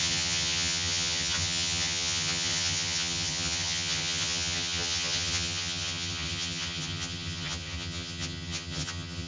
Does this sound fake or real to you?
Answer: fake